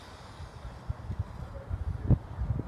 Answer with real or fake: real